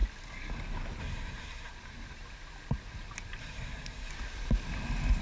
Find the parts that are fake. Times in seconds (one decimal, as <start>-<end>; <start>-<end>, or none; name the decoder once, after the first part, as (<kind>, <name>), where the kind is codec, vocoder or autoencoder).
1.0-1.7 (codec, SNAC); 3.4-4.1